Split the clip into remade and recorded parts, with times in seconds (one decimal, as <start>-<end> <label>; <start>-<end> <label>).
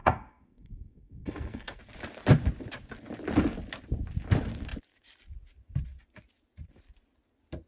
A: 0.0-1.8 remade; 1.8-7.7 recorded